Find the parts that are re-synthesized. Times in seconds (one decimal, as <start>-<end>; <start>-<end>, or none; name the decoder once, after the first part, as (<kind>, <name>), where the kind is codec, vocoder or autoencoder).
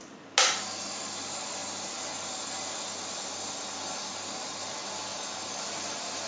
none